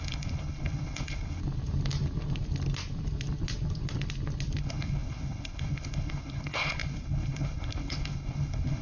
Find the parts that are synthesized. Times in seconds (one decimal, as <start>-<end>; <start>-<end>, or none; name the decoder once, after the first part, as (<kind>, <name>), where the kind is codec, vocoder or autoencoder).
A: 0.0-1.4 (codec, HILCodec); 4.6-8.8